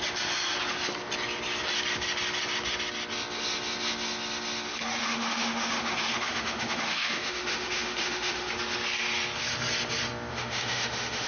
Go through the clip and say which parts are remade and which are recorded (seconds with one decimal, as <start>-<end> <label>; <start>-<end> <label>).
0.0-5.0 recorded; 5.0-8.5 remade; 8.5-10.3 recorded; 10.3-11.3 remade